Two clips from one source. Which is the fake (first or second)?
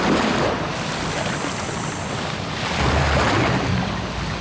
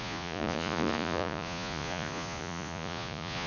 second